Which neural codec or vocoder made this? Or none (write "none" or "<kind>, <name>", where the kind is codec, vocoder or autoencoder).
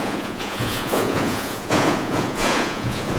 vocoder, Vocos